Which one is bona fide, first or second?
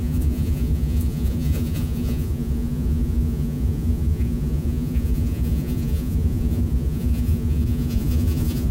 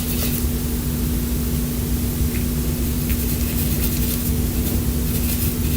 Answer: second